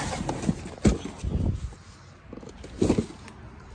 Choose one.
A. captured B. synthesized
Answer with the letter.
A